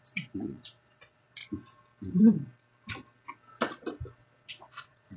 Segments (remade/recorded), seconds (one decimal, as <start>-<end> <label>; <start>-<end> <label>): 0.0-1.4 remade; 1.4-4.5 recorded; 4.5-5.2 remade

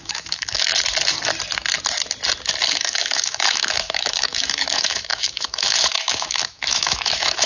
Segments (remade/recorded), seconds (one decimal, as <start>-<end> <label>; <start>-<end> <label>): 0.0-0.7 remade; 0.7-2.7 recorded; 2.7-7.5 remade

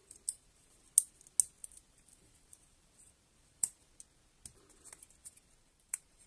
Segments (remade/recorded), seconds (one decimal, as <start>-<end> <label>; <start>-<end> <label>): 0.0-0.8 remade; 0.8-1.6 recorded; 1.6-4.0 remade; 4.0-5.2 recorded; 5.2-6.3 remade

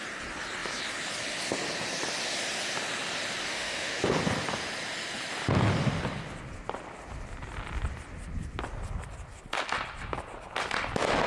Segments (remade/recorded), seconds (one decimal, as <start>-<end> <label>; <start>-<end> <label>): 0.0-3.5 recorded; 3.5-4.0 remade; 4.0-11.3 recorded